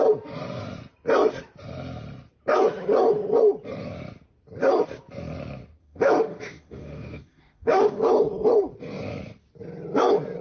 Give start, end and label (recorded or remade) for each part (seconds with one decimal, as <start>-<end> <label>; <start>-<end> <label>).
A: 0.0-5.8 recorded; 5.8-8.0 remade; 8.0-10.4 recorded